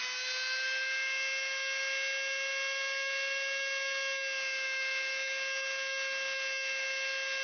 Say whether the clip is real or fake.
real